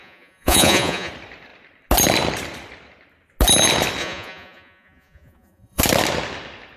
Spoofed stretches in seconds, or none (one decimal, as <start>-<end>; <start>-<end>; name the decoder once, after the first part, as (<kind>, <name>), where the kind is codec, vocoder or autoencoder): 0.0-1.1 (vocoder, Vocos); 4.0-5.8